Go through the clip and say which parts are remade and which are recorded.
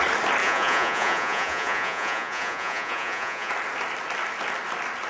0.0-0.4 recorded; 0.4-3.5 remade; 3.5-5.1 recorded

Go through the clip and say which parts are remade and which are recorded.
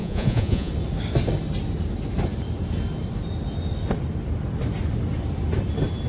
0.0-0.7 remade; 0.7-6.1 recorded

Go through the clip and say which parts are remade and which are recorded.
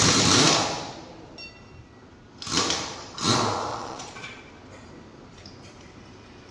0.0-3.7 recorded; 3.7-4.4 remade; 4.4-6.5 recorded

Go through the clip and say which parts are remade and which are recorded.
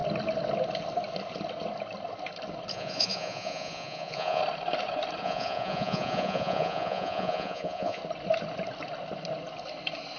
0.0-2.7 recorded; 2.7-4.4 remade; 4.4-5.2 recorded; 5.2-8.0 remade; 8.0-10.2 recorded